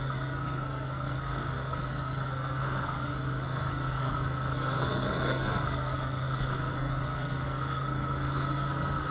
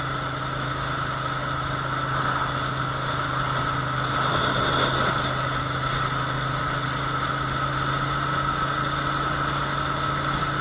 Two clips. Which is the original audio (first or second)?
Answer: second